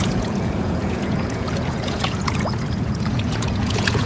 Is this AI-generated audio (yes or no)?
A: yes